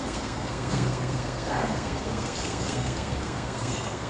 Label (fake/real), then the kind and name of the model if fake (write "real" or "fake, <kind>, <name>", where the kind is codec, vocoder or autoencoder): fake, codec, SNAC